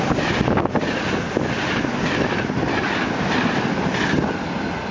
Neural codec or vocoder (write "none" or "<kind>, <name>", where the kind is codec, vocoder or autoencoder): none